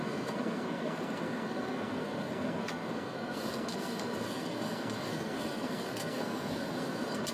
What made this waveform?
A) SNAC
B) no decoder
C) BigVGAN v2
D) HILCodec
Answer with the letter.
A